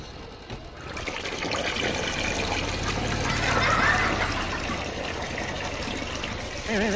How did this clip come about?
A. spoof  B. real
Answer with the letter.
B